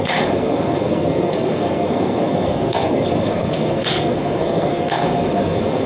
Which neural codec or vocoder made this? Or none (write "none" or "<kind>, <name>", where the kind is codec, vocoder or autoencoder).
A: codec, SNAC